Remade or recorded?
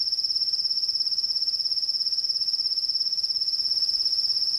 recorded